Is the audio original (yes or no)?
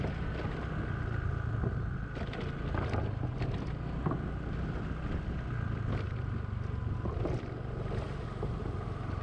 yes